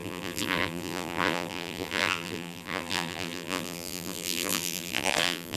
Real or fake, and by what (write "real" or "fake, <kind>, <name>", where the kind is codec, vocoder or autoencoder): fake, vocoder, BigVGAN v2